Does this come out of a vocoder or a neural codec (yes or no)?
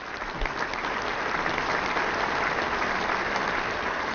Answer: no